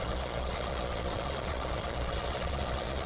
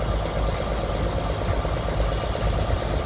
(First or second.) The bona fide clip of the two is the second